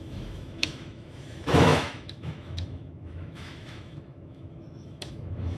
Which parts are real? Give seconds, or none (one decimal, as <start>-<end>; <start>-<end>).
none

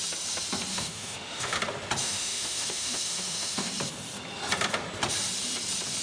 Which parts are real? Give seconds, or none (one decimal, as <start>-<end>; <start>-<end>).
0.0-0.7; 1.6-2.0; 3.7-6.0

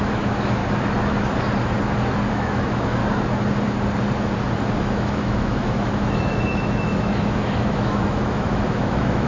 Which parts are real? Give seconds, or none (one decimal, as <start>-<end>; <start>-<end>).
0.6-2.3; 3.0-4.8